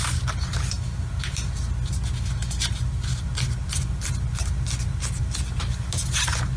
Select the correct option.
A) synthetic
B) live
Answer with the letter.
B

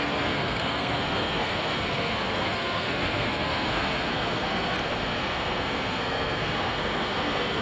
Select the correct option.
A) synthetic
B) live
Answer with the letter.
A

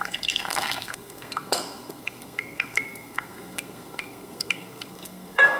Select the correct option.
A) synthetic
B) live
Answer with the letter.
A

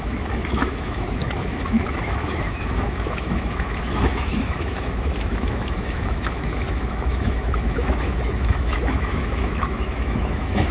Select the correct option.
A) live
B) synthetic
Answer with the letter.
B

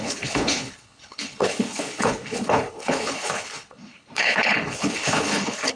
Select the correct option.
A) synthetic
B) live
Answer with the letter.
A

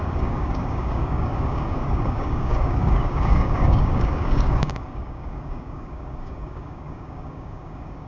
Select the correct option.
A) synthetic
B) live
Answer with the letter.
A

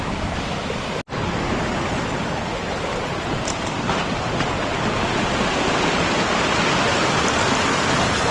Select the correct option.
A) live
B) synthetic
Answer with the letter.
A